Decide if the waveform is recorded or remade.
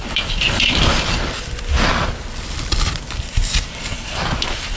remade